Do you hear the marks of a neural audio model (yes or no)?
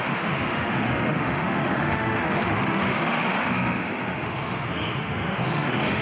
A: yes